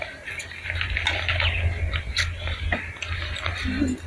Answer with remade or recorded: recorded